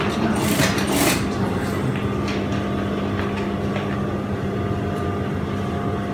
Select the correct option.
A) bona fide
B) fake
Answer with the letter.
A